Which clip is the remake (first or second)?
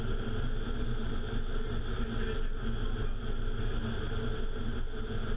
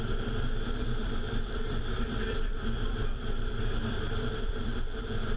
second